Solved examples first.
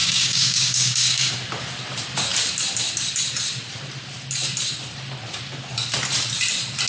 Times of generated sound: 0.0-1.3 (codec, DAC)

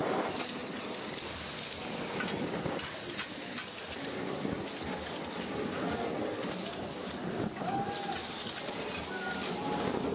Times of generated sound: none

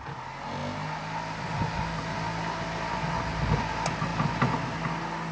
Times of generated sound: none